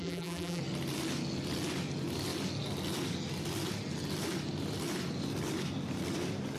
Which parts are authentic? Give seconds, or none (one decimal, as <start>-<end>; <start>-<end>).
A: 0.6-6.6